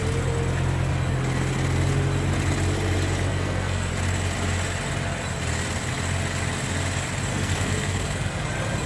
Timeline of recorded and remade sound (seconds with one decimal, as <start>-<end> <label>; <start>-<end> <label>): 0.0-3.3 recorded; 3.3-3.9 remade; 3.9-7.3 recorded; 7.3-8.5 remade; 8.5-8.9 recorded